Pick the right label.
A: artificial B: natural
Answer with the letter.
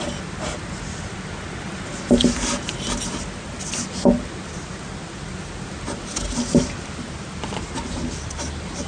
B